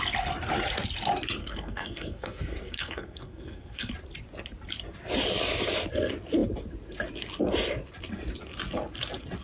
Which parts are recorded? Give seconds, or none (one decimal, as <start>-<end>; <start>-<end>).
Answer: 0.0-1.4; 3.9-9.4